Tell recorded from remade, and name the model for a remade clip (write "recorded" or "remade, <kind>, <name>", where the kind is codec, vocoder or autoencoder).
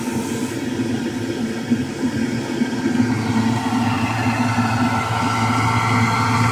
recorded